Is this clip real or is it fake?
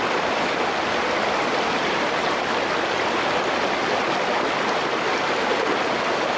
real